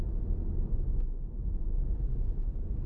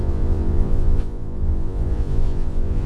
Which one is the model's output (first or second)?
second